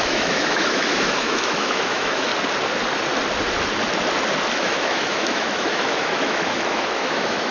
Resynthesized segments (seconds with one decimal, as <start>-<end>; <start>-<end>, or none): 0.0-2.3; 4.6-7.5